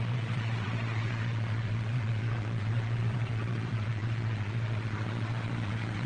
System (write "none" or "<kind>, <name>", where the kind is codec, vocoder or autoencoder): vocoder, Vocos